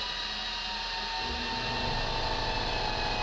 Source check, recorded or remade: recorded